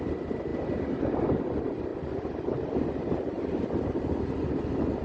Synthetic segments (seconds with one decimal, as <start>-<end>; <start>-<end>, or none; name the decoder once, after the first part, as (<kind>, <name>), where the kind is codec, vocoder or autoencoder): none